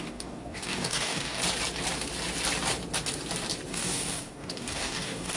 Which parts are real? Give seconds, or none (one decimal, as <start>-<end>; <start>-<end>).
1.4-3.7